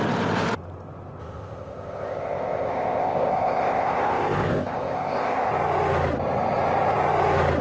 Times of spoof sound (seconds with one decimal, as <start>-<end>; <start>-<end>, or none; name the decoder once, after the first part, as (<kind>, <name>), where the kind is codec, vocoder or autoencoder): 1.2-5.5 (codec, ZipCodec)